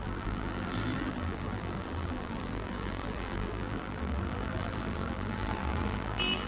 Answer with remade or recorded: remade